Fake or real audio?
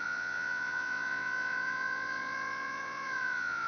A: fake